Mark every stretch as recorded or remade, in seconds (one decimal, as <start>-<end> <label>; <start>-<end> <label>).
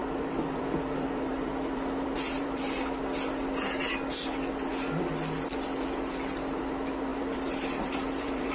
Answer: 0.0-2.6 remade; 2.6-7.1 recorded; 7.1-8.5 remade